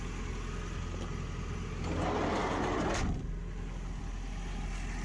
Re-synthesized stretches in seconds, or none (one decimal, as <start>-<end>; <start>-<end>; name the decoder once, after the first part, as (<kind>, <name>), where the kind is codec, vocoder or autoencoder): none